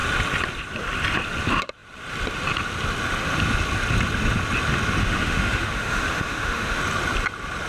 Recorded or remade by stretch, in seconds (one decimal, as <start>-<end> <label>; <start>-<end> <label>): 0.0-5.0 recorded; 5.0-6.8 remade; 6.8-7.7 recorded